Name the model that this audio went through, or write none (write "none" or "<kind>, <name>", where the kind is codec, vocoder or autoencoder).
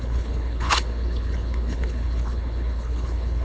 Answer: codec, HILCodec